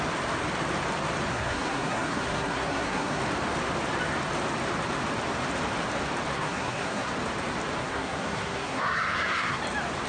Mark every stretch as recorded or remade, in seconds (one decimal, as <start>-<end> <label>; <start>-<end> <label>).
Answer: 0.0-1.3 recorded; 1.3-3.2 remade; 3.2-6.3 recorded; 6.3-7.1 remade; 7.1-7.8 recorded; 7.8-9.6 remade; 9.6-10.1 recorded